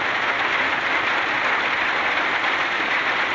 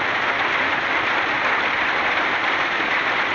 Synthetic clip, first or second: second